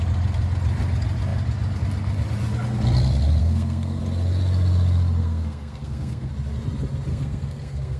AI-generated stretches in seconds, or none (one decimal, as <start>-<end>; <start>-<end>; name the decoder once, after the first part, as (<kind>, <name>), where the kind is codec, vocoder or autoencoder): 3.4-4.0 (codec, SNAC); 5.2-6.3; 7.1-8.0